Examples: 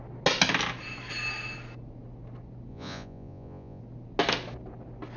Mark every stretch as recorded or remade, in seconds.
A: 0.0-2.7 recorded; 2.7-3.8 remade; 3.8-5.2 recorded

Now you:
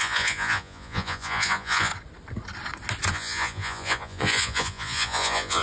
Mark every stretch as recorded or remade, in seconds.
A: 0.0-1.9 remade; 1.9-3.1 recorded; 3.1-5.6 remade

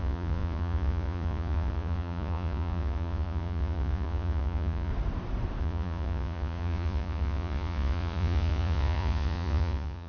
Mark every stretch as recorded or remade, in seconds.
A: 0.0-4.9 remade; 4.9-5.6 recorded; 5.6-10.1 remade

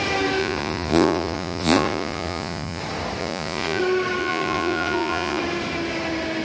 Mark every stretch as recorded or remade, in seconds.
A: 0.0-0.4 recorded; 0.4-2.8 remade; 2.8-3.2 recorded; 3.2-3.8 remade; 3.8-4.2 recorded; 4.2-5.4 remade; 5.4-6.4 recorded

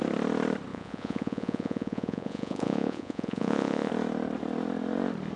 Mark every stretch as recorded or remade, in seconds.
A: 0.0-0.7 recorded; 0.7-3.9 remade; 3.9-5.4 recorded